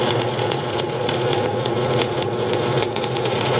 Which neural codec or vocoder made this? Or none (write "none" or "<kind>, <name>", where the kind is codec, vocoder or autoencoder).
vocoder, Vocos